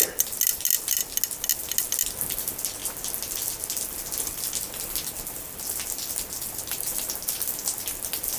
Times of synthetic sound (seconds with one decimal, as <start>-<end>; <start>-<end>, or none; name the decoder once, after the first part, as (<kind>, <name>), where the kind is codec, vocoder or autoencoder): none